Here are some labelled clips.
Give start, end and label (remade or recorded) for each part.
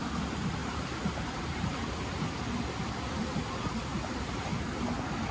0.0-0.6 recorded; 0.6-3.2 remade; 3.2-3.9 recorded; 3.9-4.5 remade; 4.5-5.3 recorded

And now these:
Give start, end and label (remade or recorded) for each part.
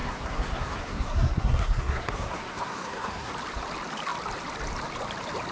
0.0-3.3 remade; 3.3-5.5 recorded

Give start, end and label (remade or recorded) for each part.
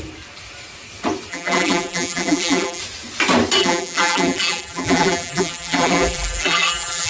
0.0-1.3 recorded; 1.3-2.8 remade; 2.8-3.6 recorded; 3.6-7.1 remade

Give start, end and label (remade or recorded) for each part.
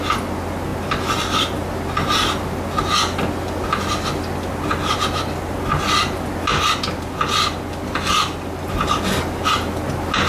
0.0-10.3 recorded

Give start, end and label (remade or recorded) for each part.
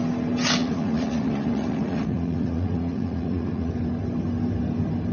0.0-0.6 recorded; 0.6-3.7 remade; 3.7-5.1 recorded